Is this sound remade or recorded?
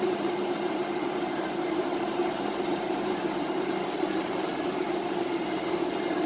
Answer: remade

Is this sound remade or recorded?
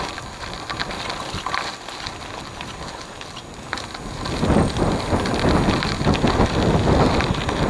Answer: recorded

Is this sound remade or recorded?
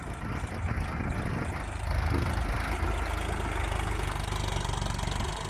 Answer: recorded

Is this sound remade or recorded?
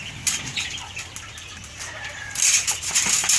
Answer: recorded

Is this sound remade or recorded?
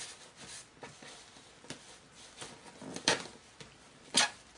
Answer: recorded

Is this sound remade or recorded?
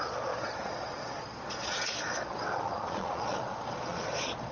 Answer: remade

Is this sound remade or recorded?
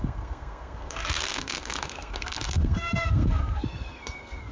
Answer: remade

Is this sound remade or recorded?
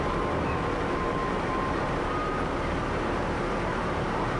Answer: remade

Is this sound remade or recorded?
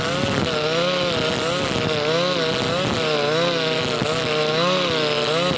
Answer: recorded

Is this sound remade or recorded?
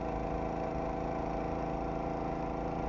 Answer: recorded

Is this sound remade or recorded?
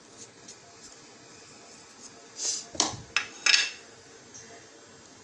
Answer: recorded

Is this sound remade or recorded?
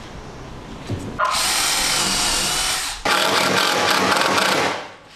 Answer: recorded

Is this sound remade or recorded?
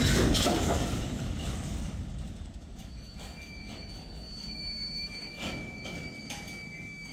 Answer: remade